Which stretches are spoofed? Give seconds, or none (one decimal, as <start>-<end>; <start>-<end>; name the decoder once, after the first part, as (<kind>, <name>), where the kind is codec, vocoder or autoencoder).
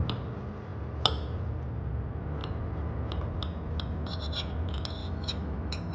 5.0-5.9 (autoencoder, DAC-VAE)